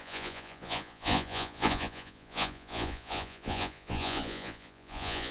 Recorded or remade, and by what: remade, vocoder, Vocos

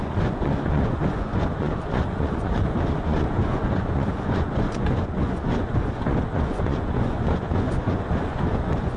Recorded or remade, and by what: remade, vocoder, Vocos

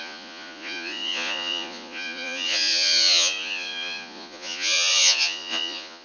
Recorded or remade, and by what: remade, vocoder, Vocos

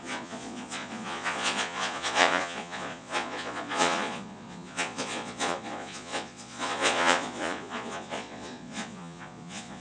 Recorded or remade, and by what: remade, vocoder, Vocos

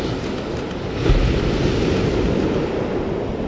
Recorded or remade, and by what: recorded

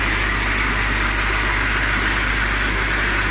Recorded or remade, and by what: recorded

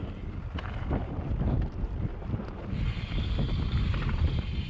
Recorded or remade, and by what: recorded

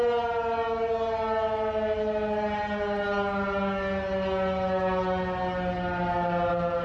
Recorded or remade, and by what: recorded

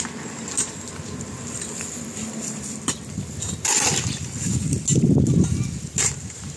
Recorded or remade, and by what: recorded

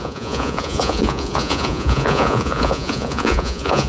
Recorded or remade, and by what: remade, vocoder, Vocos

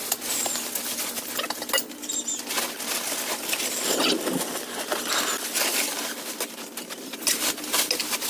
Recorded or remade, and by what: recorded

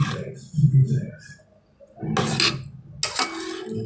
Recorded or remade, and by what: recorded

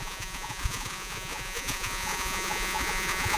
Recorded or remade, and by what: remade, vocoder, Vocos